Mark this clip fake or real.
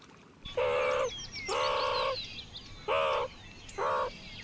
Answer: real